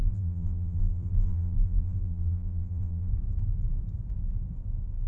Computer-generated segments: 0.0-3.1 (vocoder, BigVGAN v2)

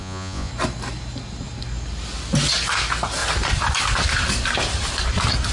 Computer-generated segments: 0.0-0.5 (vocoder, Vocos)

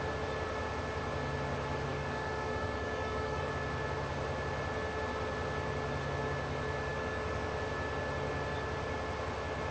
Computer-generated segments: 1.9-3.5 (codec, DAC); 6.9-7.6

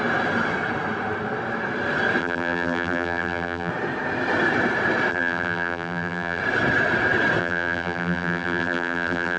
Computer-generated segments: 2.2-3.7 (vocoder, BigVGAN v2); 5.1-6.4; 7.4-9.4

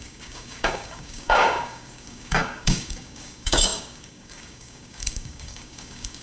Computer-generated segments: 0.0-6.2 (codec, DAC)

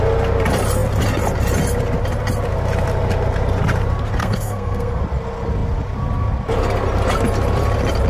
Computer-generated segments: 4.2-5.0 (codec, SNAC)

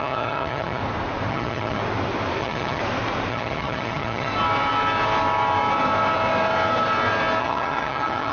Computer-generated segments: 0.0-0.8 (vocoder, HiFi-GAN); 1.3-1.8; 2.4-2.8; 3.3-4.3; 7.4-8.3